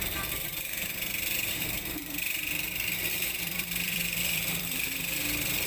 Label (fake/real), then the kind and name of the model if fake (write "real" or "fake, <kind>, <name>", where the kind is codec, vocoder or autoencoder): fake, vocoder, BigVGAN v2